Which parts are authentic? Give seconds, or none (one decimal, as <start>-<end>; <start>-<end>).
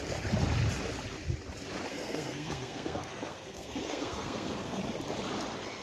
0.0-1.9; 4.8-5.8